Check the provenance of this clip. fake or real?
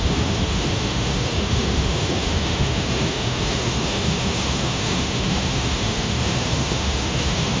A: fake